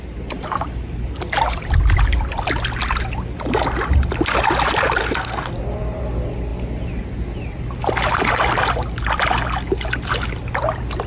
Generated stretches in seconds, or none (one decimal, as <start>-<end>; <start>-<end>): 5.0-5.5